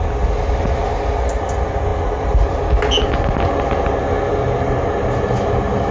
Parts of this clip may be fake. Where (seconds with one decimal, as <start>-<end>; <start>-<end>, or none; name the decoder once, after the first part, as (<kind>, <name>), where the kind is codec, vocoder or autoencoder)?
none